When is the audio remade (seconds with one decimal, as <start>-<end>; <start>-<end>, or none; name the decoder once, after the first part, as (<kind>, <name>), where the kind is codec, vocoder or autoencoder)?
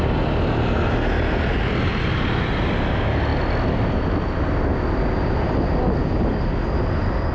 none